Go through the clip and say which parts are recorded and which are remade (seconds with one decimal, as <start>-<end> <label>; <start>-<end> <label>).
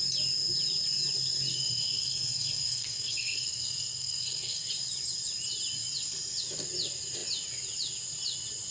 0.0-1.5 recorded; 1.5-4.7 remade; 4.7-8.7 recorded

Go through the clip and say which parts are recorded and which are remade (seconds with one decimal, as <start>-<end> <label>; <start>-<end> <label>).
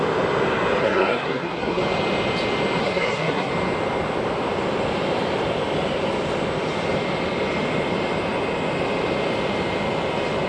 0.0-0.8 recorded; 0.8-1.8 remade; 1.8-2.8 recorded; 2.8-3.5 remade; 3.5-10.5 recorded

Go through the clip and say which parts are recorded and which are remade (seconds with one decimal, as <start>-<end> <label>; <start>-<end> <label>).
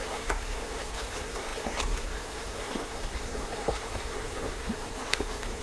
0.0-5.6 remade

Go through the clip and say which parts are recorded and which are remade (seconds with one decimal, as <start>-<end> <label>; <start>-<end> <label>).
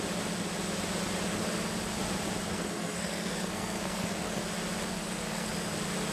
0.0-2.5 recorded; 2.5-4.4 remade; 4.4-5.0 recorded; 5.0-5.5 remade; 5.5-6.1 recorded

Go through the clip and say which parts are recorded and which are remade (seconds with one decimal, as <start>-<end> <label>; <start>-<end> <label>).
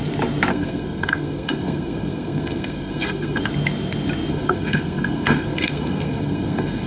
0.0-0.5 recorded; 0.5-3.4 remade; 3.4-4.3 recorded; 4.3-6.9 remade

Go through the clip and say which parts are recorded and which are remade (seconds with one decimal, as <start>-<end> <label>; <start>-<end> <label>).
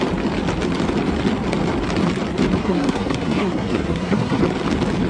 0.0-2.6 recorded; 2.6-4.4 remade; 4.4-5.1 recorded